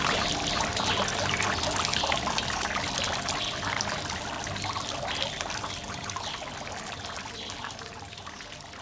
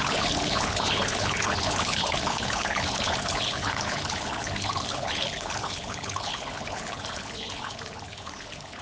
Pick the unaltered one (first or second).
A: first